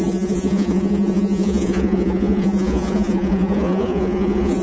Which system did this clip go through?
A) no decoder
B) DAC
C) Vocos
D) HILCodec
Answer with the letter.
C